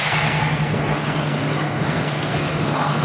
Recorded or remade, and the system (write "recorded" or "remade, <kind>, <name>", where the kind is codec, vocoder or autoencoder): remade, codec, SNAC